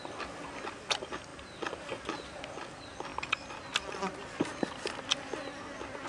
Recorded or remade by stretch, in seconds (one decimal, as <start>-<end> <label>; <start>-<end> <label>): 0.0-6.1 recorded